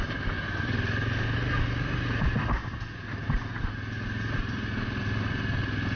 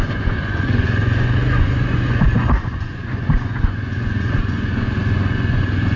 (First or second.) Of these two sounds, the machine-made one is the second